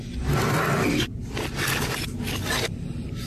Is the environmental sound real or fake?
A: real